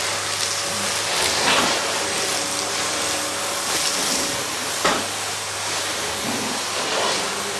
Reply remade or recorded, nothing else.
recorded